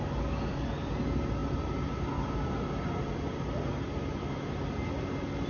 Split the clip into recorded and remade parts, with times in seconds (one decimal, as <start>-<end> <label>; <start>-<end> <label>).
0.0-5.5 recorded